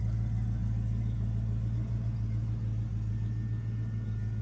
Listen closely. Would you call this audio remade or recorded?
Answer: recorded